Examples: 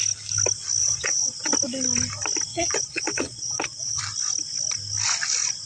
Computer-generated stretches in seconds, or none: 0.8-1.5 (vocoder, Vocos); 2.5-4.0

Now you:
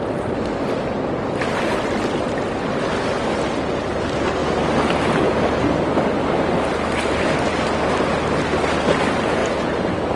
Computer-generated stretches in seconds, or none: 9.4-10.2 (vocoder, BigVGAN v2)